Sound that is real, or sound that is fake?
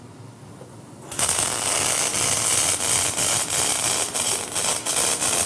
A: real